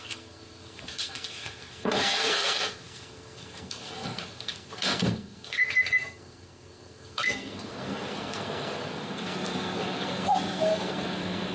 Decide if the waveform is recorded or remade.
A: remade